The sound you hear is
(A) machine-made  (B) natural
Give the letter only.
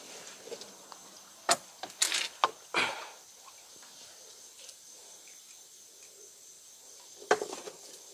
B